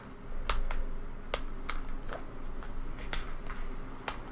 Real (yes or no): yes